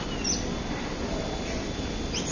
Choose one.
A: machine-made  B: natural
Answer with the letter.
B